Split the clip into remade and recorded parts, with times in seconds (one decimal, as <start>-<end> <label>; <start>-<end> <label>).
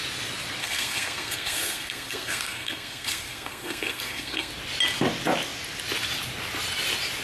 0.0-0.6 recorded; 0.6-4.5 remade; 4.5-7.2 recorded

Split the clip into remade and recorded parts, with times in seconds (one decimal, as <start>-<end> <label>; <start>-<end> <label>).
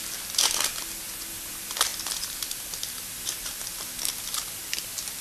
0.0-1.9 recorded; 1.9-5.2 remade